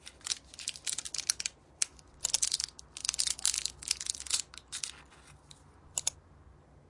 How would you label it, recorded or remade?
recorded